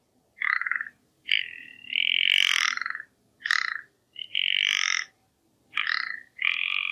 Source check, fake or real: real